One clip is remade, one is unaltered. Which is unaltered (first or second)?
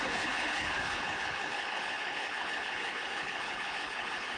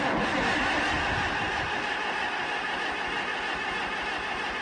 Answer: second